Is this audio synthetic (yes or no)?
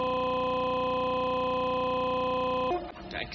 no